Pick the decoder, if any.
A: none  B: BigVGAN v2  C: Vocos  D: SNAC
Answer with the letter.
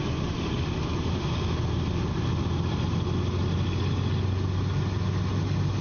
A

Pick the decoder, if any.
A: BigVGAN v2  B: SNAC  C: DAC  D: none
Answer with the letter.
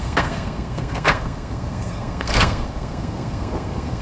B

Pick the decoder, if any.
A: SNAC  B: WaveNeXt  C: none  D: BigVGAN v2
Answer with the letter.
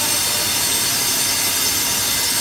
C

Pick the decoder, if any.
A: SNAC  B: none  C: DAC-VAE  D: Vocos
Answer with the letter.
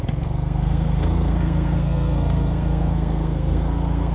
A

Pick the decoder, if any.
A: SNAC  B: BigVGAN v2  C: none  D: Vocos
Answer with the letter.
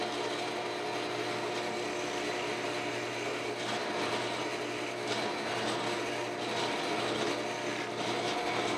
C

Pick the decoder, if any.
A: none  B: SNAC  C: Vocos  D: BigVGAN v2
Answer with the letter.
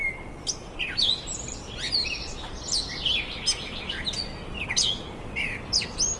A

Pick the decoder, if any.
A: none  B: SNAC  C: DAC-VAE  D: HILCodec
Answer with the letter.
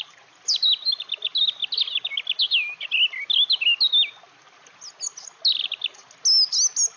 A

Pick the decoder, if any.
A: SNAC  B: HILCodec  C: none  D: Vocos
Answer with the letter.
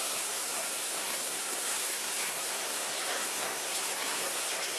A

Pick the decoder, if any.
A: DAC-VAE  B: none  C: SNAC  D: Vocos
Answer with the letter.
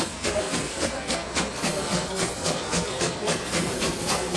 C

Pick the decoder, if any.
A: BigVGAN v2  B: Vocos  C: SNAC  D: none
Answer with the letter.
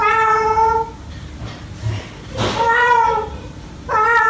D